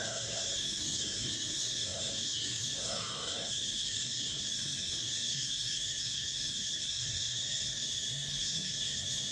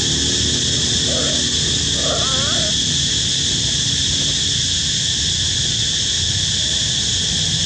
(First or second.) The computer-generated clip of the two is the first